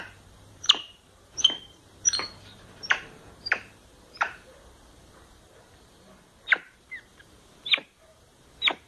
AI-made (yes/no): yes